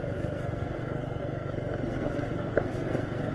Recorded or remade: remade